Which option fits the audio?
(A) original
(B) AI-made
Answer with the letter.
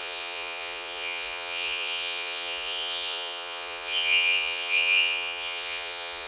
B